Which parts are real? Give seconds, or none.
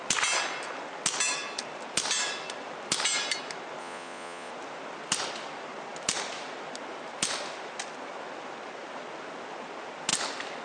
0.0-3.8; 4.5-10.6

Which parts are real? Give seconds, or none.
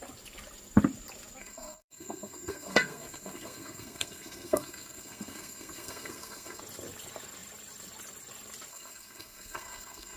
0.0-1.4; 6.6-8.7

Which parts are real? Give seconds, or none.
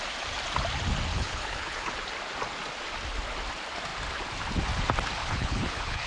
0.0-1.1; 1.9-5.2